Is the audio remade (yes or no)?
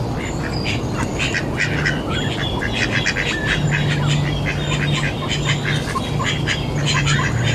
no